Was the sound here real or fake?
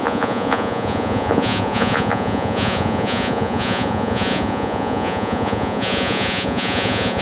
fake